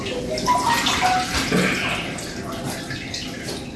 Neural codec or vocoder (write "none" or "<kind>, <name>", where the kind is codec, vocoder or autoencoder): none